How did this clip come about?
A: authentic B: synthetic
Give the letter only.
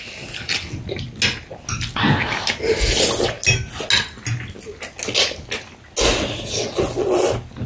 A